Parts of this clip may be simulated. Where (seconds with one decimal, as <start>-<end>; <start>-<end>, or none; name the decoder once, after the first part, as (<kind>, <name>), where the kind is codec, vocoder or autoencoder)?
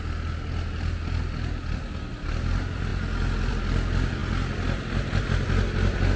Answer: none